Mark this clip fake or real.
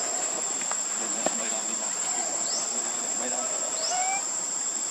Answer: fake